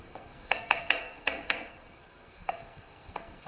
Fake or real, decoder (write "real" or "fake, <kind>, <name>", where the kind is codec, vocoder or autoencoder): fake, codec, SNAC